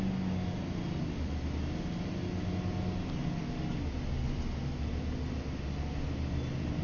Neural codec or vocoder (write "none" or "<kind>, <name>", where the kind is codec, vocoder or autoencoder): none